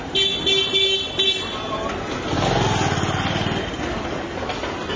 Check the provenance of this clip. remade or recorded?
recorded